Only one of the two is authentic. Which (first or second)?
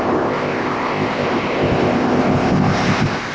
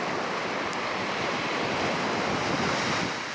second